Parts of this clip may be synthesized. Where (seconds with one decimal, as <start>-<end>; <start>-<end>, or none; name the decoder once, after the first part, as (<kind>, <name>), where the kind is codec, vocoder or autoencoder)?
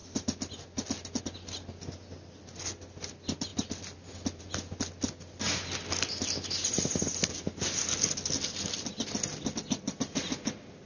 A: none